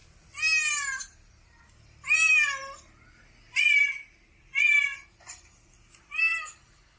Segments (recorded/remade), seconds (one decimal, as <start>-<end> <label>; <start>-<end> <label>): 0.0-7.0 recorded